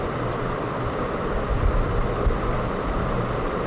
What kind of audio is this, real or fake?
fake